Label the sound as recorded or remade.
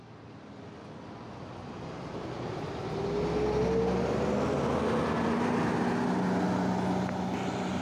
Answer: recorded